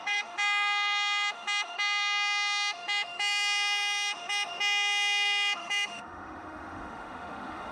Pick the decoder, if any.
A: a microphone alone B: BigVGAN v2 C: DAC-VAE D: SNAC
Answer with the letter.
C